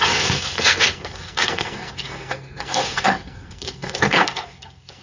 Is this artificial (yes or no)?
yes